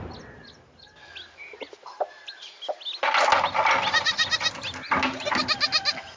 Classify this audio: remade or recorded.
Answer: recorded